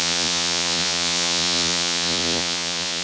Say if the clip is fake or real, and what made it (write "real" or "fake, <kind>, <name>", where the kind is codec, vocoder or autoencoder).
fake, vocoder, Vocos